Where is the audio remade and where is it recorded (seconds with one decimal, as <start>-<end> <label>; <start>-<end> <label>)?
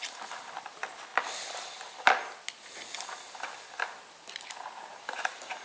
0.0-5.6 recorded